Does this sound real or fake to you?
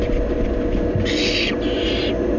real